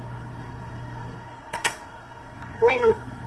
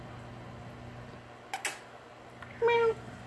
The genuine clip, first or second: second